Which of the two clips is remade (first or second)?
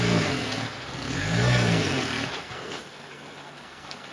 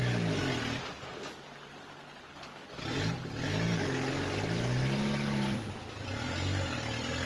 first